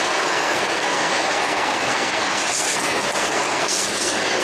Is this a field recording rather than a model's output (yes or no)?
no